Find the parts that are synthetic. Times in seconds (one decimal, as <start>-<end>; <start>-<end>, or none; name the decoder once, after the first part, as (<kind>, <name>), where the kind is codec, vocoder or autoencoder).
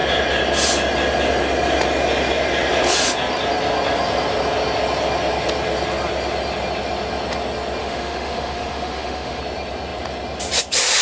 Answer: 7.8-9.4 (autoencoder, DAC-VAE)